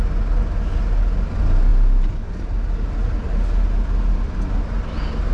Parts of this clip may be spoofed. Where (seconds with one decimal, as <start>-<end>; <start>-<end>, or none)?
none